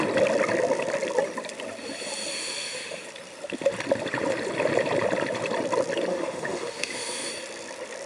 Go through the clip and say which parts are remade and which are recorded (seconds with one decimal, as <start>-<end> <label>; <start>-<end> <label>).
0.0-2.3 recorded; 2.3-3.0 remade; 3.0-6.1 recorded; 6.1-7.3 remade; 7.3-8.1 recorded